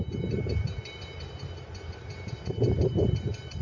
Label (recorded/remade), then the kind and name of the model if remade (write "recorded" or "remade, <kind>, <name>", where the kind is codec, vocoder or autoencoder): remade, vocoder, BigVGAN v2